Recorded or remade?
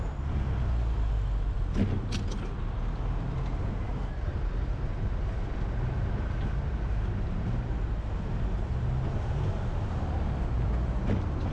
recorded